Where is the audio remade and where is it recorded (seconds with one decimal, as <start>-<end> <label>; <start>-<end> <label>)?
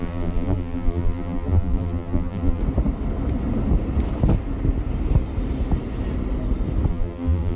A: 0.0-2.6 remade; 2.6-6.9 recorded; 6.9-7.6 remade